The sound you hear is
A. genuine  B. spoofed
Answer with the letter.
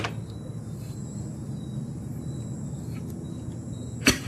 A